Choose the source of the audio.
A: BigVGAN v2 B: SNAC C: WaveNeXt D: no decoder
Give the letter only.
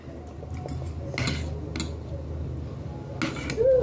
D